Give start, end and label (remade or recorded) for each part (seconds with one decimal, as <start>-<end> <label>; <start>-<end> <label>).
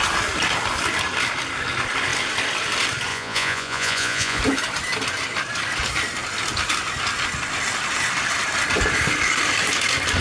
0.0-3.1 recorded; 3.1-4.4 remade; 4.4-10.2 recorded